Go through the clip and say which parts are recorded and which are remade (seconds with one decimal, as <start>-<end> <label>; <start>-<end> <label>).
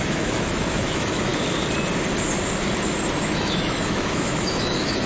0.0-1.3 remade; 1.3-3.2 recorded; 3.2-5.1 remade